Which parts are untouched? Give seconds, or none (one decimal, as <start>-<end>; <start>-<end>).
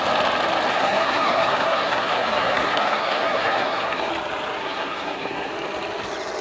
0.0-0.7; 4.1-4.6; 5.5-6.4